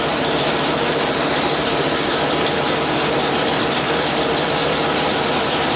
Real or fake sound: real